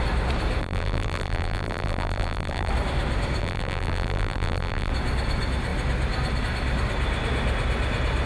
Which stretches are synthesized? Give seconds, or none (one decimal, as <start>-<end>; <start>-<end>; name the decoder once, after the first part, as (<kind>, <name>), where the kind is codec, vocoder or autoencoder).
0.6-2.7 (vocoder, BigVGAN v2); 3.4-4.9